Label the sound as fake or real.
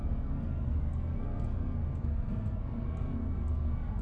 fake